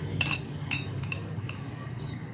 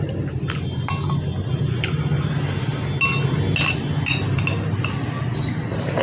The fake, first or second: first